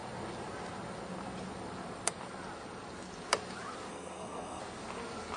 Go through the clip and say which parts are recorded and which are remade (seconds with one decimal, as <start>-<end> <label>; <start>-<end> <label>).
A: 0.0-3.9 recorded; 3.9-4.6 remade; 4.6-5.4 recorded